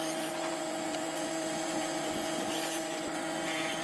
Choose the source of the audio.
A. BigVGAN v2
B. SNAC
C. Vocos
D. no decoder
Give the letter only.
C